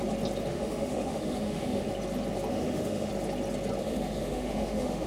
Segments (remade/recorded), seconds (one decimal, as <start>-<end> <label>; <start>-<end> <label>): 0.0-0.5 recorded; 0.5-1.9 remade; 1.9-2.5 recorded; 2.5-3.1 remade; 3.1-3.8 recorded; 3.8-5.1 remade